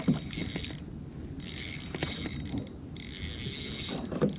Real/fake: real